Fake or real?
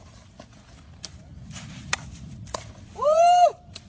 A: fake